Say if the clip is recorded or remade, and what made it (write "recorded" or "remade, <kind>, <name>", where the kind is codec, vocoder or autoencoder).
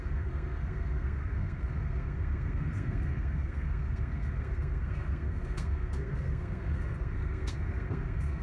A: remade, codec, SNAC